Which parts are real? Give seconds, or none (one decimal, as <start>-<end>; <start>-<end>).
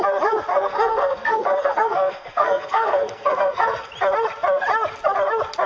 0.0-0.5; 3.9-5.7